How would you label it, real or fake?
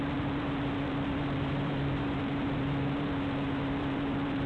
fake